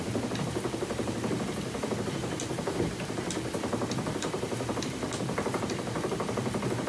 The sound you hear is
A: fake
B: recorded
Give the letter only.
A